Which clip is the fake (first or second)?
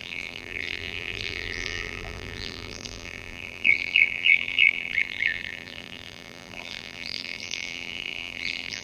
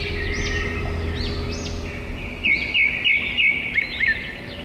first